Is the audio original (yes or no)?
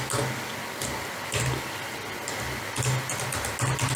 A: yes